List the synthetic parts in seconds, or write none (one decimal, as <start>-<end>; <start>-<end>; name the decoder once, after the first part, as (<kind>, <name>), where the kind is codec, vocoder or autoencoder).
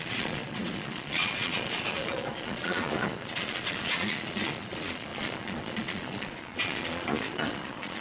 0.0-8.0 (vocoder, Vocos)